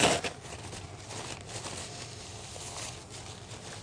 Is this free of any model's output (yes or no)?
yes